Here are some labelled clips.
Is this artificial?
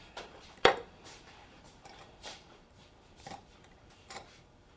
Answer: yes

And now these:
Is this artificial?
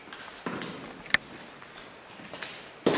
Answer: no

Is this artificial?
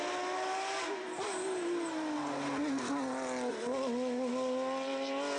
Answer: no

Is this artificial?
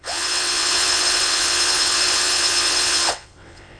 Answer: yes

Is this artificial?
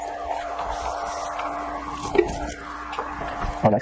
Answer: no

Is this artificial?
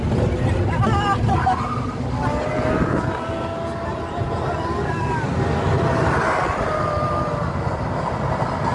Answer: no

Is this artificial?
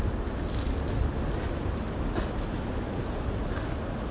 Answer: no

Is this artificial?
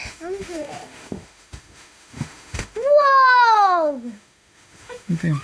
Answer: yes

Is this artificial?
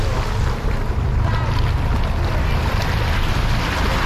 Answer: no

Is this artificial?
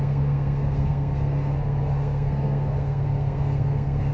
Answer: yes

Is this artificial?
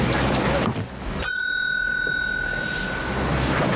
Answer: no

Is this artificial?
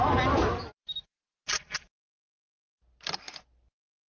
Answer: no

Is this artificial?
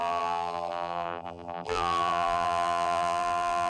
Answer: yes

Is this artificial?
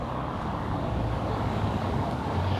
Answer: yes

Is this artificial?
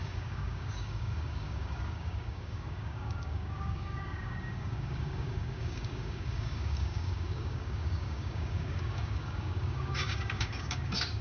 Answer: yes